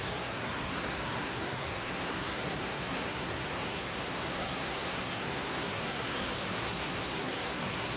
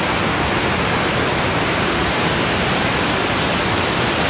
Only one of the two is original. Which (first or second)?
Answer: second